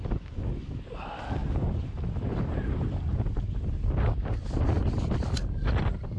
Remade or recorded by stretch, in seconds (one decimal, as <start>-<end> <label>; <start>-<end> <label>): 0.0-6.2 recorded